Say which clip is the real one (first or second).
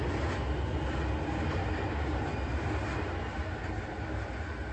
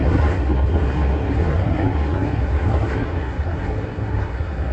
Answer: first